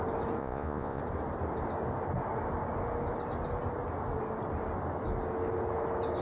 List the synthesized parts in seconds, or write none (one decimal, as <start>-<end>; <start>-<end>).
0.4-1.0

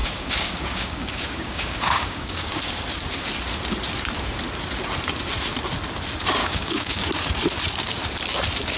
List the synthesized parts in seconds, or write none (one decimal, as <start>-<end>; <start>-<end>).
0.0-2.6; 6.4-7.1